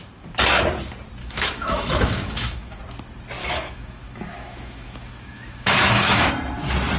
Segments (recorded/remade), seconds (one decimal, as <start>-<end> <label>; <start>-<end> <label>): 0.0-1.2 recorded; 1.2-2.8 remade; 2.8-3.4 recorded; 3.4-6.3 remade; 6.3-7.0 recorded